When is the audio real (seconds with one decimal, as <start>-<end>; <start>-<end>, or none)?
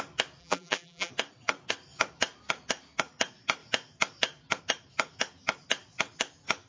0.0-0.4; 1.1-6.7